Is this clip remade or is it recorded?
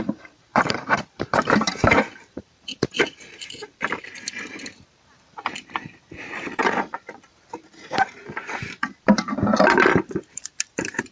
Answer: remade